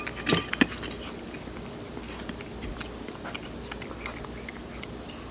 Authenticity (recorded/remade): recorded